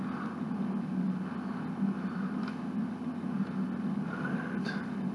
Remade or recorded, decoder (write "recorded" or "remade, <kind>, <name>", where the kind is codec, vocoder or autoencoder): recorded